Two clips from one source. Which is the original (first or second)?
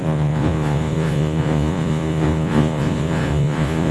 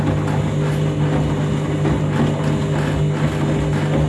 second